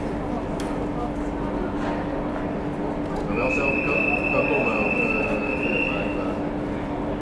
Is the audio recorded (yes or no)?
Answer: yes